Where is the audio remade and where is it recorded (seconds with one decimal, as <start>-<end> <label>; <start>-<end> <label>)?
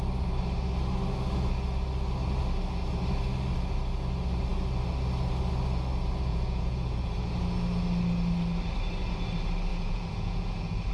0.0-6.3 recorded; 6.3-7.3 remade; 7.3-9.7 recorded; 9.7-10.9 remade